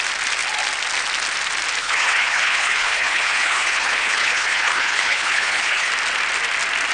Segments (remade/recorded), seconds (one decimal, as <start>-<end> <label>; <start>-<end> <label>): 0.0-1.8 recorded; 1.8-5.9 remade; 5.9-6.9 recorded